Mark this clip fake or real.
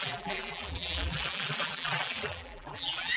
fake